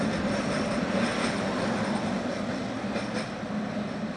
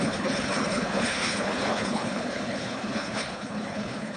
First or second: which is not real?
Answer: second